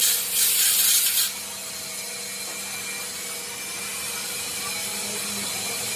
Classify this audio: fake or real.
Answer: real